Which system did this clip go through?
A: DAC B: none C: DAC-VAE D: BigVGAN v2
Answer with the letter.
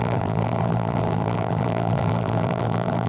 D